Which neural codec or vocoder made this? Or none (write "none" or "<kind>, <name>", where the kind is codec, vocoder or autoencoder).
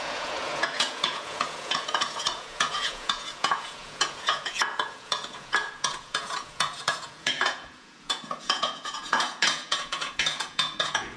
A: vocoder, Vocos